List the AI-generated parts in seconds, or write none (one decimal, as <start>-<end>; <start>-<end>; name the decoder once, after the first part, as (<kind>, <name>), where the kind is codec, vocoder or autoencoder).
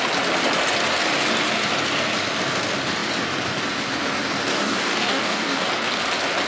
4.5-5.7 (codec, DAC)